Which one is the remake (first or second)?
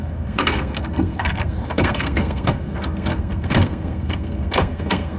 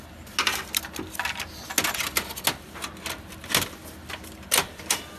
first